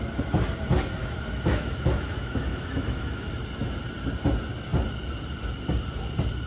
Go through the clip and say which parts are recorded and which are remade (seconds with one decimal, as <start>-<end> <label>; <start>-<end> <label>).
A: 0.0-1.0 recorded; 1.0-3.3 remade; 3.3-6.5 recorded